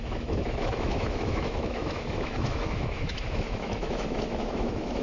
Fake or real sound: fake